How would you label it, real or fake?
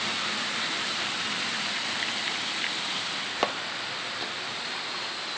real